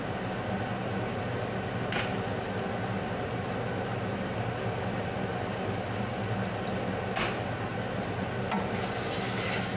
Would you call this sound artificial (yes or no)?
no